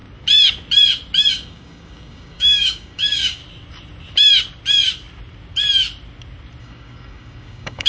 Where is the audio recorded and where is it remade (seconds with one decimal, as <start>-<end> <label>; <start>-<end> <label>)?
0.0-1.3 recorded; 1.3-3.4 remade; 3.4-6.6 recorded; 6.6-7.9 remade